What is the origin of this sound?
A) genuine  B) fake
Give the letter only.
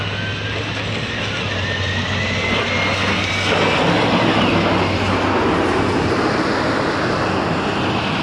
A